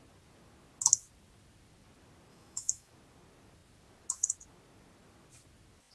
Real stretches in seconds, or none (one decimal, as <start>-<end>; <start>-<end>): 0.0-2.3; 2.9-5.9